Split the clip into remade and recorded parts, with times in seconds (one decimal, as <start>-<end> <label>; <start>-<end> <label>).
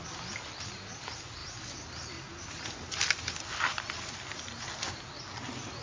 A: 0.0-5.8 recorded